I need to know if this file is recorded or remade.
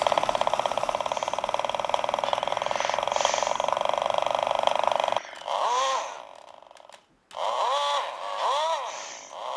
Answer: recorded